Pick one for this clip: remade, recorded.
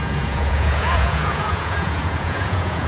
remade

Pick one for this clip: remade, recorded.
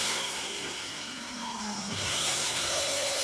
remade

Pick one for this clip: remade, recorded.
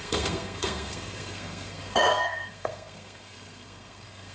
remade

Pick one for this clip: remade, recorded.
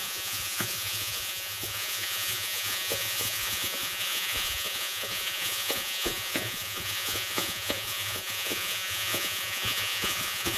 remade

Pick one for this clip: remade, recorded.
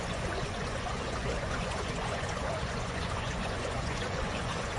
remade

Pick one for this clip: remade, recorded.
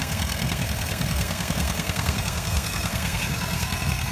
remade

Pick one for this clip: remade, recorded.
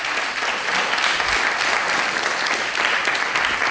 recorded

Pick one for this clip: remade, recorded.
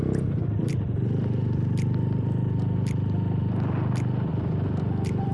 remade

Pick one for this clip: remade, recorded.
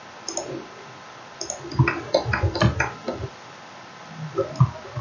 recorded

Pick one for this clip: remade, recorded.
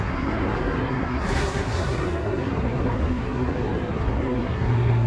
remade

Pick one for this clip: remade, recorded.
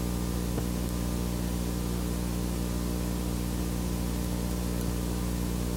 recorded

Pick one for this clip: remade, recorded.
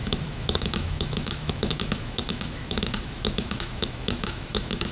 remade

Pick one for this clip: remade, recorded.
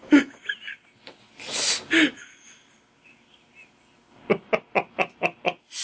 recorded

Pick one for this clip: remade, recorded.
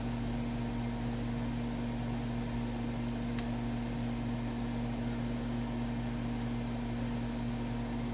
recorded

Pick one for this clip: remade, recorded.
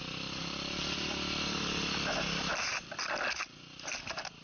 recorded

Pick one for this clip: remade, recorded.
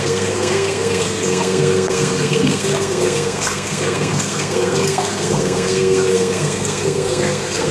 remade